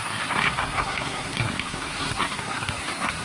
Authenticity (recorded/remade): remade